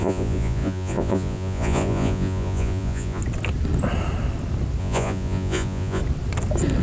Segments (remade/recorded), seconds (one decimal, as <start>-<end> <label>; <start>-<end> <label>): 0.0-3.2 remade; 3.2-4.8 recorded; 4.8-6.0 remade; 6.0-6.8 recorded